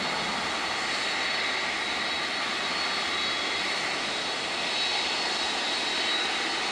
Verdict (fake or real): real